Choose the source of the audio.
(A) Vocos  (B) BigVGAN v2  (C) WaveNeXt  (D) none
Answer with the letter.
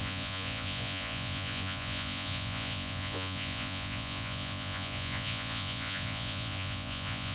A